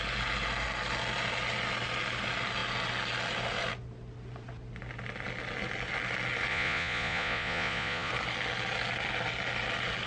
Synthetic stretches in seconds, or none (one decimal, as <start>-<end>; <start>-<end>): 6.5-8.1